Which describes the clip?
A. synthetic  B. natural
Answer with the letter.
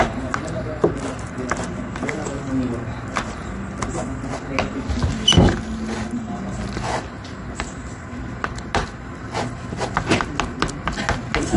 B